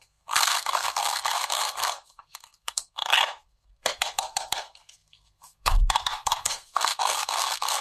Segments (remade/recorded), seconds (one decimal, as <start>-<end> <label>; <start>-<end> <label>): 0.0-7.8 remade